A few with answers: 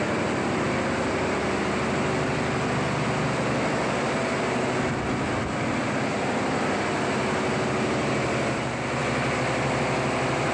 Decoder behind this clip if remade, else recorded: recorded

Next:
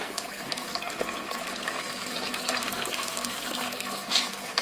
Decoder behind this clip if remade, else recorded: remade, codec, SNAC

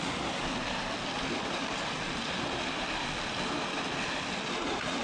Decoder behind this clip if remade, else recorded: recorded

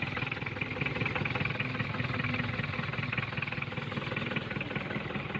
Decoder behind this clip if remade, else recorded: recorded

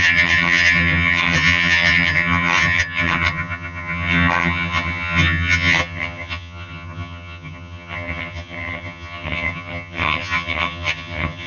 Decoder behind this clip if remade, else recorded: remade, vocoder, HiFi-GAN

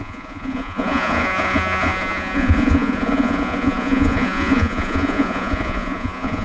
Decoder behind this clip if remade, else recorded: remade, vocoder, Vocos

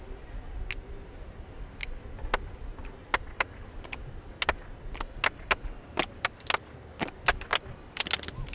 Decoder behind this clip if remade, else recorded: recorded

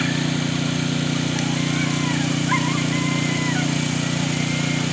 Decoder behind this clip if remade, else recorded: recorded